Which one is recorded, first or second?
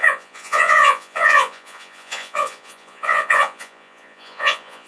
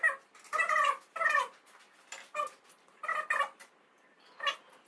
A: second